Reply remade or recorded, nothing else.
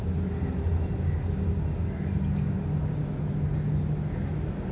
recorded